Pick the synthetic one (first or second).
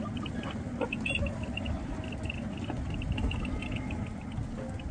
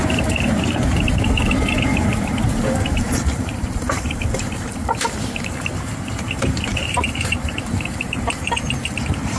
second